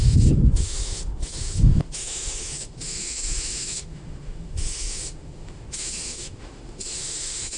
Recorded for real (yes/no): no